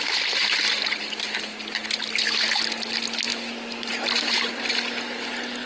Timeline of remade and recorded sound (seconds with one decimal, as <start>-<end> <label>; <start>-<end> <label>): 0.0-5.7 recorded